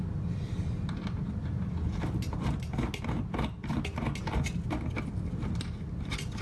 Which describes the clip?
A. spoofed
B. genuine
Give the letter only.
B